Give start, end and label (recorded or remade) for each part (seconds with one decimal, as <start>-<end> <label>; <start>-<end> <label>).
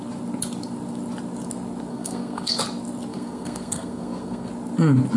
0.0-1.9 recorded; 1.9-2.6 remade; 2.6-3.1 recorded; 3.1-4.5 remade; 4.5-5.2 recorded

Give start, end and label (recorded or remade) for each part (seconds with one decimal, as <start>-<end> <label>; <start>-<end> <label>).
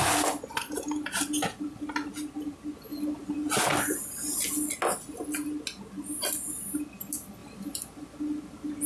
0.0-8.9 recorded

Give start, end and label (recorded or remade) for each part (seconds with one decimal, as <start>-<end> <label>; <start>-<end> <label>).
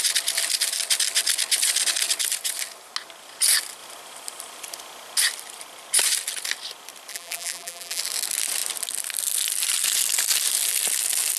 0.0-7.1 recorded; 7.1-8.0 remade; 8.0-11.4 recorded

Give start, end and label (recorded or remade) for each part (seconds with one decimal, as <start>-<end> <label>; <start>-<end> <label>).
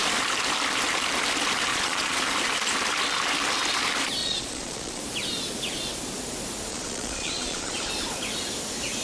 0.0-1.7 recorded; 1.7-2.2 remade; 2.2-4.2 recorded; 4.2-5.0 remade; 5.0-6.7 recorded; 6.7-7.9 remade; 7.9-9.0 recorded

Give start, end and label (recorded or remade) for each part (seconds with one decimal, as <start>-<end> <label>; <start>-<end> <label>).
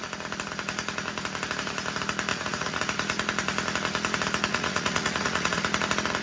0.0-2.3 recorded; 2.3-2.8 remade; 2.8-4.5 recorded; 4.5-5.6 remade; 5.6-6.2 recorded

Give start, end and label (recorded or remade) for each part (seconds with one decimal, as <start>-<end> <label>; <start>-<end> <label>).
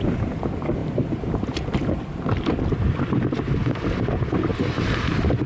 0.0-5.5 recorded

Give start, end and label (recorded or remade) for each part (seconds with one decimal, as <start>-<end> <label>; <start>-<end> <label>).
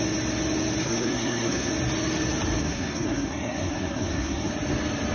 0.0-0.8 recorded; 0.8-1.7 remade; 1.7-2.6 recorded; 2.6-4.5 remade; 4.5-5.1 recorded